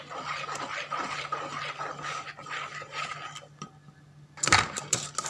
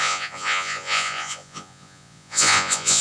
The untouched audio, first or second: first